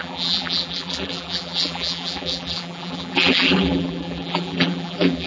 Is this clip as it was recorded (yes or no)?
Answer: no